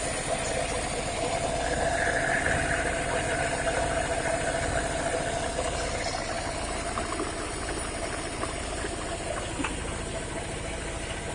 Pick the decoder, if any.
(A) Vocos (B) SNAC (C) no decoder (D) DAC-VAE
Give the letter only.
C